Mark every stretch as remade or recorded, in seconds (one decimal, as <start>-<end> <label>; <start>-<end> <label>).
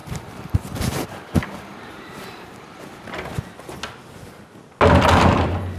0.0-2.8 remade; 2.8-5.8 recorded